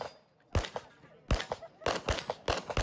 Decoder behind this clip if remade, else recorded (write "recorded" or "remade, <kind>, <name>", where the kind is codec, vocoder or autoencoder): recorded